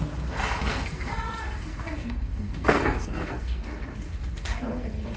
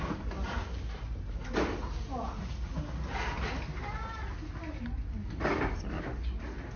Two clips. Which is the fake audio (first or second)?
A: first